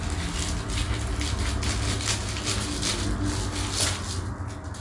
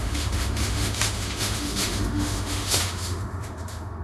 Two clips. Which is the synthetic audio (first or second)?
second